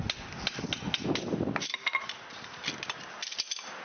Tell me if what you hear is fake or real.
real